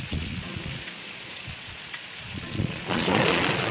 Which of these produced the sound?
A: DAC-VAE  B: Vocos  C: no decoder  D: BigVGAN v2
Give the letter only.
B